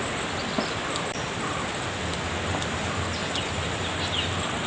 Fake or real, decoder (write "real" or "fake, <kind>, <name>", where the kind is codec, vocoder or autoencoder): real